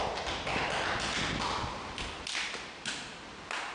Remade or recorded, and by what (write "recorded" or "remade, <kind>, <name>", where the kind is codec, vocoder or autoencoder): recorded